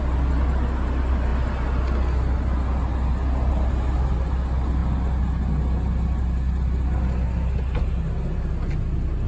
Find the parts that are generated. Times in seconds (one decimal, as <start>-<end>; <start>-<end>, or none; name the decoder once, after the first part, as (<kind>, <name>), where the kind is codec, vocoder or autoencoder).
none